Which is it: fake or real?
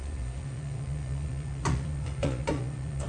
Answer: fake